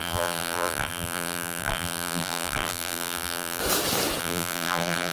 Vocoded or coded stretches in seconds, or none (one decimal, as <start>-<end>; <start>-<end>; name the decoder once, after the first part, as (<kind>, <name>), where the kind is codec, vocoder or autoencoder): 0.0-3.6 (vocoder, BigVGAN v2); 4.2-5.1